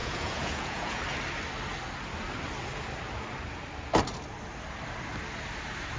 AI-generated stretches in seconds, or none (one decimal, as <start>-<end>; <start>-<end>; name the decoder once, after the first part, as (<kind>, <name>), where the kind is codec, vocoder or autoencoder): 0.0-1.0 (vocoder, Vocos)